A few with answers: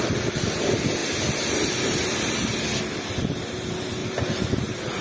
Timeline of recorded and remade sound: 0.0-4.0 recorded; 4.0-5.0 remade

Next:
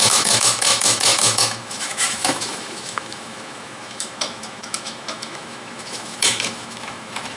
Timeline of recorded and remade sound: 0.0-7.4 remade

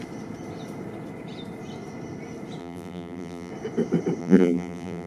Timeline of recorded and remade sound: 0.0-2.6 recorded; 2.6-3.5 remade; 3.5-4.2 recorded; 4.2-5.1 remade

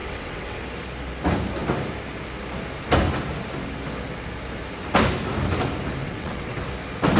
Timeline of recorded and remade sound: 0.0-0.6 remade; 0.6-6.0 recorded; 6.0-6.6 remade; 6.6-7.2 recorded